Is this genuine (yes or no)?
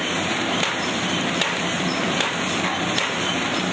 yes